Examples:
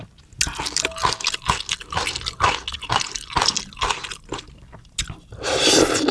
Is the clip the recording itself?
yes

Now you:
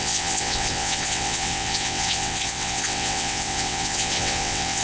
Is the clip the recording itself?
no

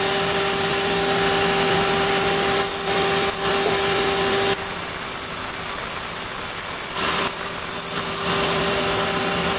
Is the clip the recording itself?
yes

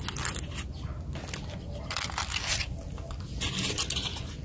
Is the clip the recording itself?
yes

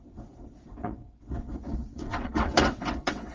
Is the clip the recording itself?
no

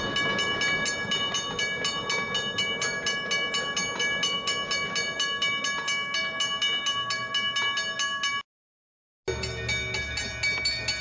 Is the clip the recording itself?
yes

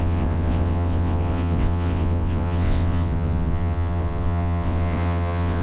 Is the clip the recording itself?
no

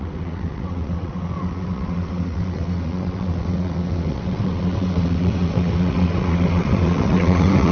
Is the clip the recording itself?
no